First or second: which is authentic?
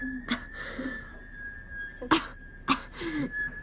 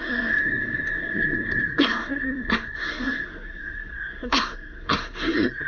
first